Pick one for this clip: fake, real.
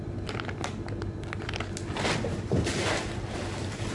real